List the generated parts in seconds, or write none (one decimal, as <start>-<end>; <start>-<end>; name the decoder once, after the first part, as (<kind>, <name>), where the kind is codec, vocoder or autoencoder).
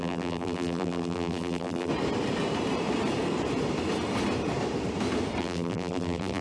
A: 0.0-1.9 (vocoder, BigVGAN v2); 5.4-6.4